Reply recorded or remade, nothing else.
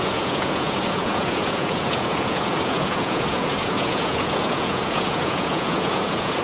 remade